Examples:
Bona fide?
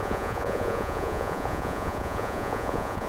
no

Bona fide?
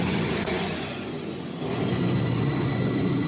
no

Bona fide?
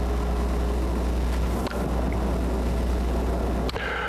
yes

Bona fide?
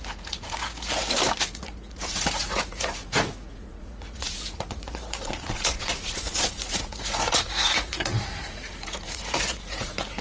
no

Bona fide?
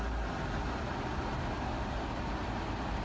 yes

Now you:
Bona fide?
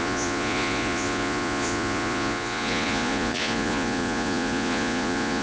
no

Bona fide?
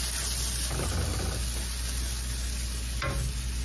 yes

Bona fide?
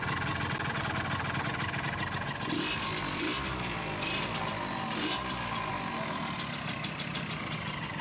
yes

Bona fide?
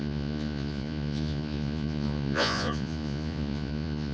no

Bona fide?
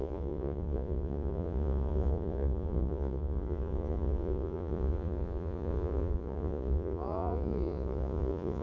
no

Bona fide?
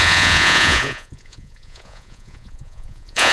no